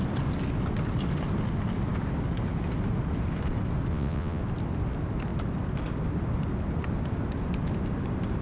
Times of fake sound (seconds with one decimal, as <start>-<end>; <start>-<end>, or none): 3.9-4.4